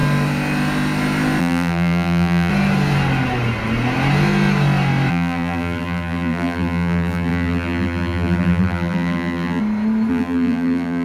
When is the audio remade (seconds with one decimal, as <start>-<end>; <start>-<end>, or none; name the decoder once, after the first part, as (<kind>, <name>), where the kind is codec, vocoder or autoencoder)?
1.4-2.5 (vocoder, BigVGAN v2); 5.1-9.6; 10.1-11.0

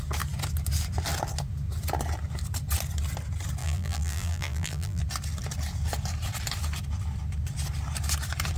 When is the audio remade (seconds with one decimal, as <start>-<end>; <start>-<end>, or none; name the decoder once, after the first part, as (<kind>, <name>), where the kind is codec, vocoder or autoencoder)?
3.6-5.0 (vocoder, BigVGAN v2)